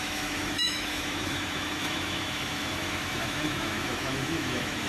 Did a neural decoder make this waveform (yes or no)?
yes